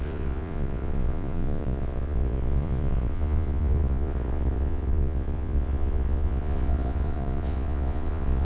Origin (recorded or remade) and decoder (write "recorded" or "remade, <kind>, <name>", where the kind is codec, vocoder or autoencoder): remade, vocoder, Vocos